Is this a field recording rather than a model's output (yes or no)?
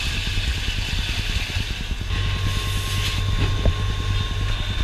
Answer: yes